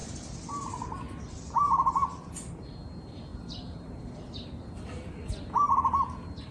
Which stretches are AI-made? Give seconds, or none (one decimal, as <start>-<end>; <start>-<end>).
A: 3.3-4.5